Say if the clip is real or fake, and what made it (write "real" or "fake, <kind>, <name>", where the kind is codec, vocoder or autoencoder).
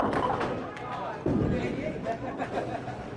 real